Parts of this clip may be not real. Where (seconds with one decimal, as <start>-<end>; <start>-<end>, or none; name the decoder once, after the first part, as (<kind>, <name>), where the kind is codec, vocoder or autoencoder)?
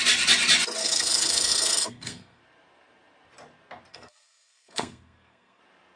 0.8-2.4 (codec, SNAC); 3.9-5.6